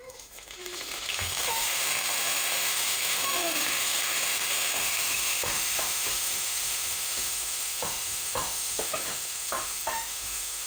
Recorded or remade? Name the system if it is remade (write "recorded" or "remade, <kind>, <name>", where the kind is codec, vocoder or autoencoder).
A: remade, autoencoder, DAC-VAE